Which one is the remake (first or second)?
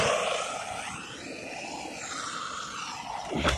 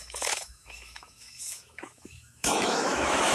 second